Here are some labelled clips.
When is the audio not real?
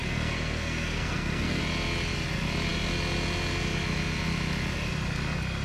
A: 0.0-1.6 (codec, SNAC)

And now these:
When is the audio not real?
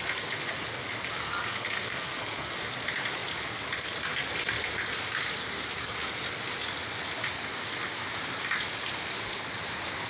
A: 1.2-2.5 (codec, SNAC)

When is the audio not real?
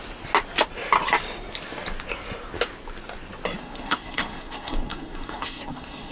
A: 3.6-6.1 (codec, SNAC)